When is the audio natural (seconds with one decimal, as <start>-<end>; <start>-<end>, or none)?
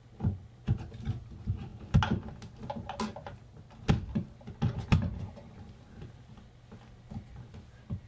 0.0-8.1